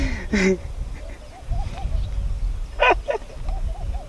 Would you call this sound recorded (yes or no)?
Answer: yes